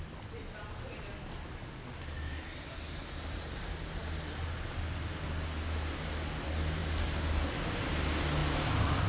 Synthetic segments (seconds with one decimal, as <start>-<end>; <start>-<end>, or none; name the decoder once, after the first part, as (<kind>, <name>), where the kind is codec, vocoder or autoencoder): none